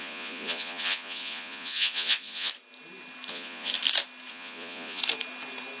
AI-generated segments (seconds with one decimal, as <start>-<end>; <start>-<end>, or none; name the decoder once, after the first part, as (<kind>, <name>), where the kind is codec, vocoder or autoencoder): 0.0-2.5 (vocoder, Vocos); 3.3-3.7; 4.3-5.0